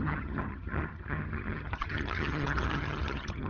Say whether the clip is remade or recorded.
remade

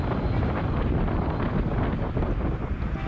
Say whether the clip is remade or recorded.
recorded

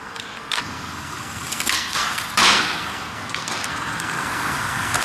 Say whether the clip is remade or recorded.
remade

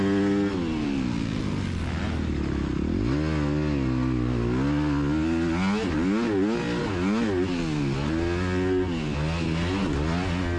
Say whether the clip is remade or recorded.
recorded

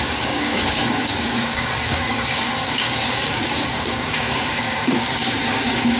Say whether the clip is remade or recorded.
remade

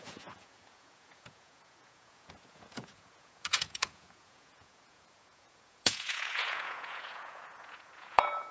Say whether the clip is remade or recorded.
remade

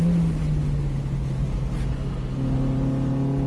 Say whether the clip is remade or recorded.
recorded